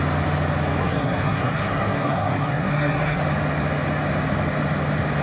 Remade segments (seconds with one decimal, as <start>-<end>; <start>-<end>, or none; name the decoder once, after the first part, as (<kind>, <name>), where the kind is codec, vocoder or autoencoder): 0.8-3.2 (codec, SNAC)